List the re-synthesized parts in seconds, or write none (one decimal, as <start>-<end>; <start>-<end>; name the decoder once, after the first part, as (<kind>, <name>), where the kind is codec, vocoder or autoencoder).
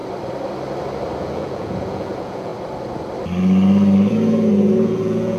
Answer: 1.2-2.5 (vocoder, Vocos); 4.1-5.4